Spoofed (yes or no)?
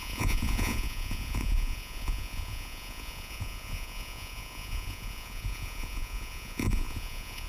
yes